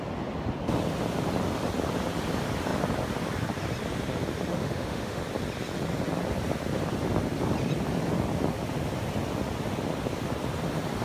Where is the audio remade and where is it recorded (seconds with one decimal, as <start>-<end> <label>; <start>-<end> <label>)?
0.0-4.5 recorded; 4.5-5.2 remade; 5.2-11.0 recorded